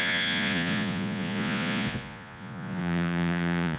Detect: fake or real fake